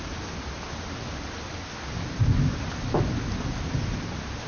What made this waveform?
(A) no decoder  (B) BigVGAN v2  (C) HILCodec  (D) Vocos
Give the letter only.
A